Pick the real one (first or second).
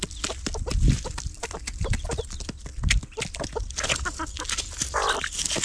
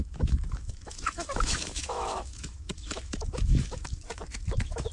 first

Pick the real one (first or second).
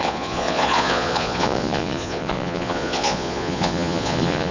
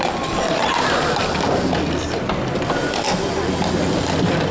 second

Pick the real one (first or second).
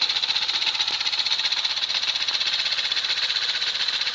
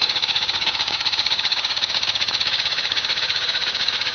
first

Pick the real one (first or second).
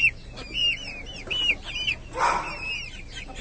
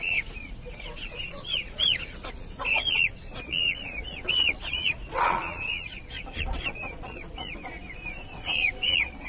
first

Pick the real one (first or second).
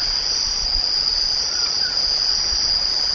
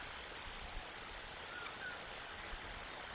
second